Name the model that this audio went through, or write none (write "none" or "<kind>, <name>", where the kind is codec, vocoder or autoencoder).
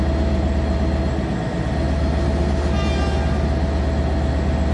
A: none